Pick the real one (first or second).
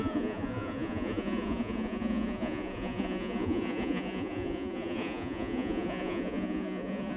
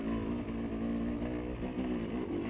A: second